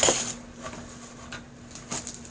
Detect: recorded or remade recorded